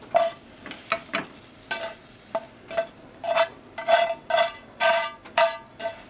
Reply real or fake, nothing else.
real